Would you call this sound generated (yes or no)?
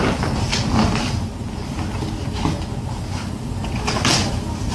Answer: no